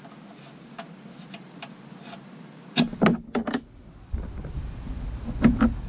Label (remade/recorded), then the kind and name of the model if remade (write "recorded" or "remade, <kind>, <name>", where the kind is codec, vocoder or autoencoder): recorded